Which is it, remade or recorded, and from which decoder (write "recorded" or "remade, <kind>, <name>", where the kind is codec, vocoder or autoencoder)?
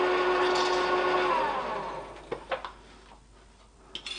recorded